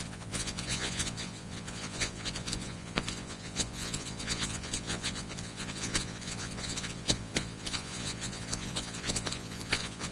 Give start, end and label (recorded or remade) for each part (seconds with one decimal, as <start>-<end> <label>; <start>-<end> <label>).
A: 0.0-10.1 remade

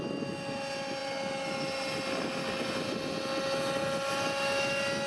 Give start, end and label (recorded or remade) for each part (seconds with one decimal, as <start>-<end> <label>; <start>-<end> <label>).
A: 0.0-5.1 recorded

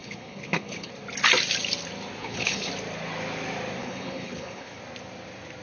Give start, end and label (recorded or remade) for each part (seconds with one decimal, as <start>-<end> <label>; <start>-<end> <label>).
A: 0.0-0.9 remade; 0.9-2.2 recorded; 2.2-2.7 remade; 2.7-3.8 recorded; 3.8-4.8 remade; 4.8-5.6 recorded

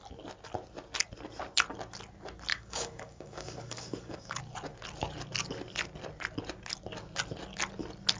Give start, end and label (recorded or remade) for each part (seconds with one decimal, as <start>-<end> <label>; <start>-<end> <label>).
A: 0.0-2.5 recorded; 2.5-4.4 remade; 4.4-8.2 recorded